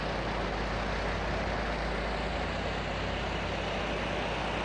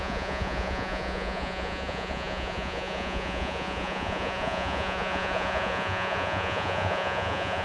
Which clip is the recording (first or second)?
first